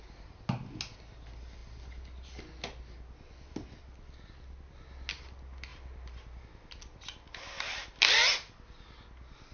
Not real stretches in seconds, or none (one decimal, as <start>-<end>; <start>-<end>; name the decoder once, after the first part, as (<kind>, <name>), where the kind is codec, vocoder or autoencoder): none